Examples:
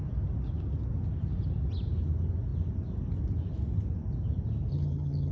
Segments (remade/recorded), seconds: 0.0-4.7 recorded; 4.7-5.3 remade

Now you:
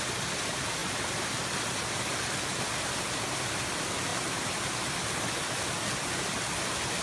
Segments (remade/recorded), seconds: 0.0-7.0 recorded